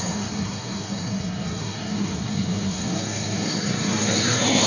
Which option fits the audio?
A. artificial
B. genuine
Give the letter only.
A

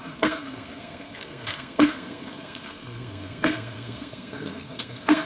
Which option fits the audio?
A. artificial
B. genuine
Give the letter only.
A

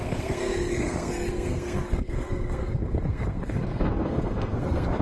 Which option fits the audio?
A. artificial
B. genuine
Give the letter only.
A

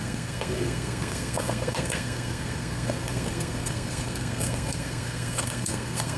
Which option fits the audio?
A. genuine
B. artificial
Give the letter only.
B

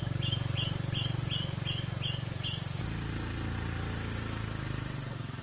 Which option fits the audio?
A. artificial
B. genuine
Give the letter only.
B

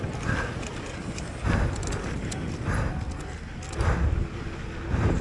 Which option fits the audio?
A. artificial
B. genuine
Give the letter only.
B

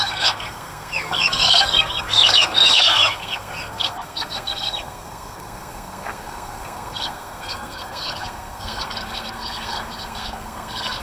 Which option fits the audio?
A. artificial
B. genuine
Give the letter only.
A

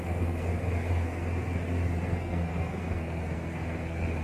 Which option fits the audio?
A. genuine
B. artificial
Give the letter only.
B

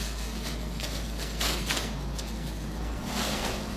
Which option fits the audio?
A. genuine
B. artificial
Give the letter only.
B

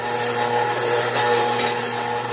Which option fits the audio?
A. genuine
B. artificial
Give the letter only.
A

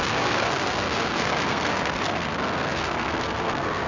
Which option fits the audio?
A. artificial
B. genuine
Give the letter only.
A